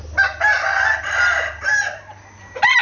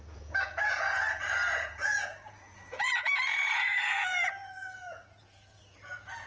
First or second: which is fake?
second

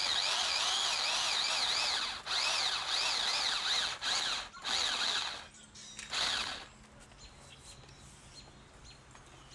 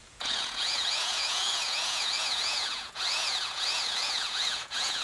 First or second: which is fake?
second